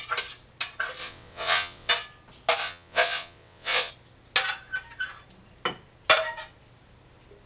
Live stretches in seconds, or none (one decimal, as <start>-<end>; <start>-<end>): 0.0-1.0; 1.9-2.6; 3.9-7.5